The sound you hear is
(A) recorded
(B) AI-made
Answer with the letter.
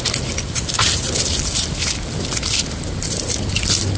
A